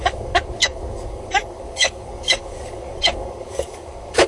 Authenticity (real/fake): fake